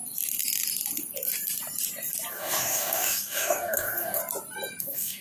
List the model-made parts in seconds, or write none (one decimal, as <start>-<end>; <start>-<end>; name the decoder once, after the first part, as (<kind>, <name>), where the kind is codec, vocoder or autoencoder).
2.3-4.2 (codec, DAC); 4.8-5.2